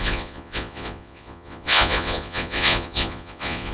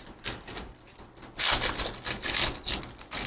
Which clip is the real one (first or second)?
second